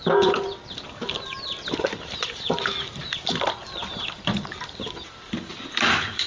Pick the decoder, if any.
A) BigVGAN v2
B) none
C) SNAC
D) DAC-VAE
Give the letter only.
A